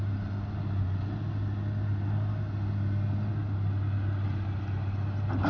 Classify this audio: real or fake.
real